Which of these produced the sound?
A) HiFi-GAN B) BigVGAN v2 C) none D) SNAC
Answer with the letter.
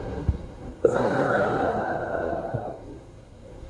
D